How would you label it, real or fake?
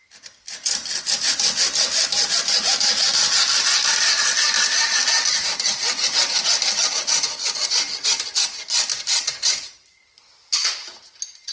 real